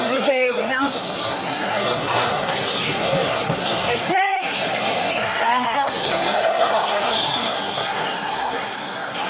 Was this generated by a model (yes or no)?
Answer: yes